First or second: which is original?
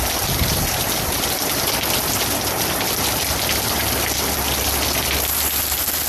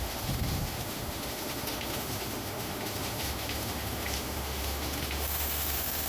first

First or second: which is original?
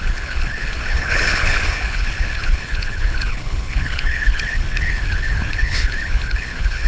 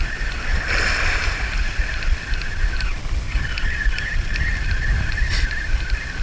second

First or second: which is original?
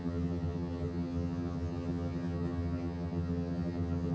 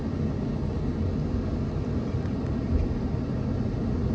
second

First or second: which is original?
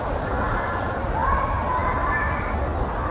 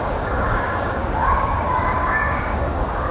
first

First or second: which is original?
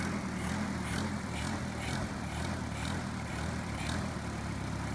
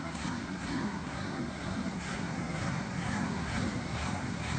first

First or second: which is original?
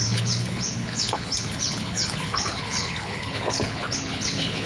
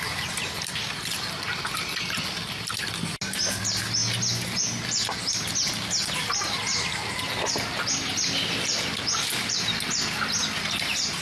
second